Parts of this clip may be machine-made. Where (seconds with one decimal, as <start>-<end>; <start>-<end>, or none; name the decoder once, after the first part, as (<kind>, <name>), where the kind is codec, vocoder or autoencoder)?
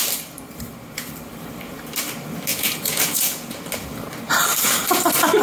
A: 2.5-3.6 (vocoder, Vocos)